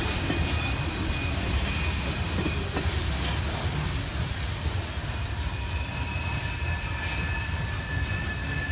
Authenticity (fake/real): real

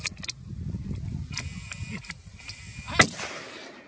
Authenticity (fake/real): real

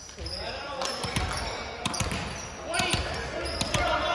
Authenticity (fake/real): real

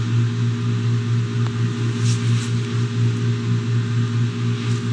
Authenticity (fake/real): real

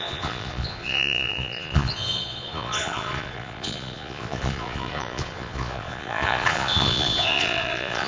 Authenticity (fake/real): fake